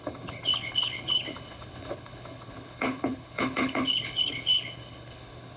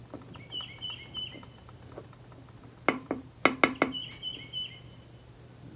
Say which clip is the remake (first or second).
first